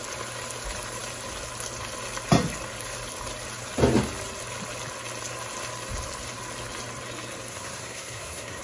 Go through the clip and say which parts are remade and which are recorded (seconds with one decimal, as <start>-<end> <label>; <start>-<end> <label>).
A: 0.0-7.5 recorded; 7.5-8.6 remade